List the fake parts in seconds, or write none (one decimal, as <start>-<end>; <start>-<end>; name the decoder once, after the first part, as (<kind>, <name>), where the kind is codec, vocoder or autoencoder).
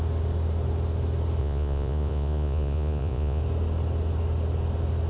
1.4-3.4 (vocoder, Vocos)